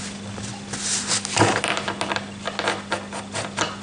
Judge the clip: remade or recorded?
recorded